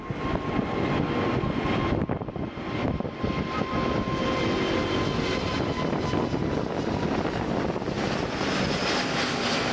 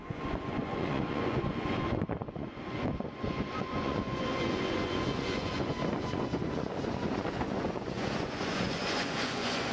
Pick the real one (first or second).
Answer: first